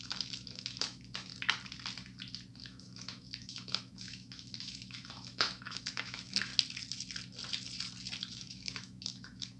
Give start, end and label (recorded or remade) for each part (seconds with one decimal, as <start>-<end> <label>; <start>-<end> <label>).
0.0-1.3 remade; 1.3-2.5 recorded; 2.5-6.5 remade; 6.5-8.3 recorded; 8.3-9.6 remade